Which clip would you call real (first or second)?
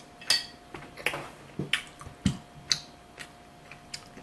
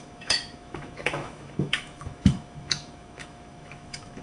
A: first